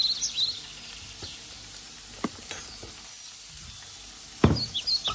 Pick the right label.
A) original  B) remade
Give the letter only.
A